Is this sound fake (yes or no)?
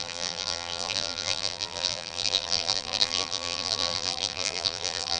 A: yes